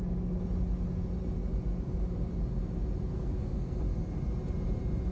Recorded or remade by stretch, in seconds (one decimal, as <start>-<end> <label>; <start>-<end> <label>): 0.0-3.1 recorded; 3.1-3.8 remade; 3.8-5.1 recorded